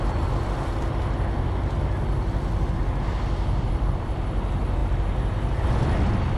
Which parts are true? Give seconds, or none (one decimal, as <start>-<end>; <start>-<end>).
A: 0.0-6.4